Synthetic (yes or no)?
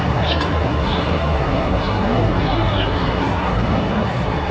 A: yes